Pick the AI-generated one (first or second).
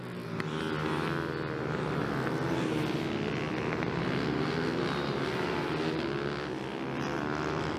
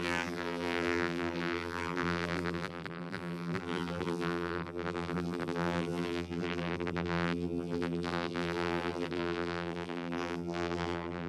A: second